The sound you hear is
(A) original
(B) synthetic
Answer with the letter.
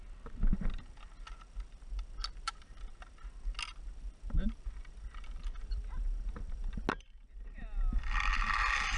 A